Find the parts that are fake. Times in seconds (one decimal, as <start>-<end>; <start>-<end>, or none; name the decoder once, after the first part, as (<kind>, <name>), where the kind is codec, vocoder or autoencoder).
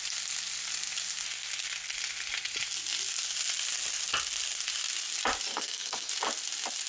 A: 5.5-6.1 (codec, SNAC)